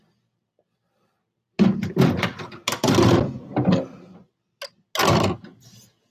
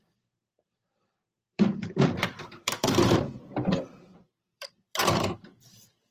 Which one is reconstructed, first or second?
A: second